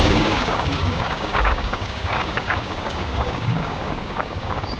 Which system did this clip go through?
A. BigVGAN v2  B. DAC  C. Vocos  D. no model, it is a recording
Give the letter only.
B